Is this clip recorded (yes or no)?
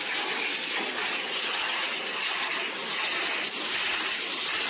yes